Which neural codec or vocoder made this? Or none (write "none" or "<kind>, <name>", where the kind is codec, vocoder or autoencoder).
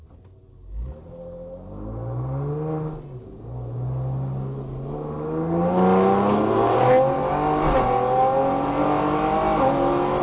none